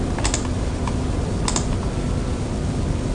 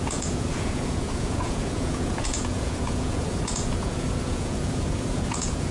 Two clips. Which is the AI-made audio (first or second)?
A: second